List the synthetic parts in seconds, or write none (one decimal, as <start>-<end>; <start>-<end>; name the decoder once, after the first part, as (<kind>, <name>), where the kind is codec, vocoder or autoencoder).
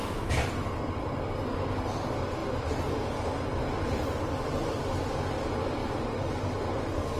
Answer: 0.0-1.1 (vocoder, BigVGAN v2); 2.4-4.7